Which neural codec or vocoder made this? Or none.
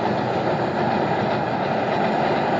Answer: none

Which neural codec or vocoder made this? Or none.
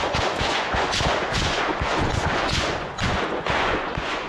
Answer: vocoder, Vocos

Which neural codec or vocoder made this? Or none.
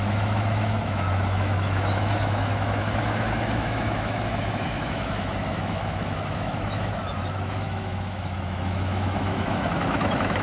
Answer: autoencoder, DAC-VAE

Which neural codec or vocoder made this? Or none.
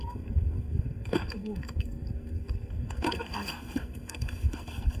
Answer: codec, SNAC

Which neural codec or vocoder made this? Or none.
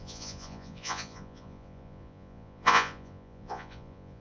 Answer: vocoder, Vocos